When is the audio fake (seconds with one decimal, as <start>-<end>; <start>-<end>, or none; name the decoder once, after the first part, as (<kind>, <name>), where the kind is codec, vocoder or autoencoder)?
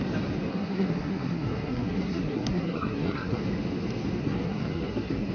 0.5-3.4 (codec, SNAC); 4.2-5.3